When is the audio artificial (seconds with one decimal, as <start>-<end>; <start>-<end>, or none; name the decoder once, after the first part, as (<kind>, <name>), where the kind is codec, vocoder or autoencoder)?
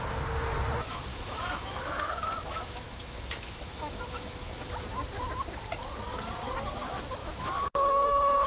1.1-4.7 (autoencoder, DAC-VAE); 7.2-8.5